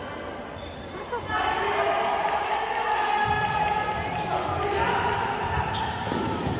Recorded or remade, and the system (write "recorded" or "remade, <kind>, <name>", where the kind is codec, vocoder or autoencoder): recorded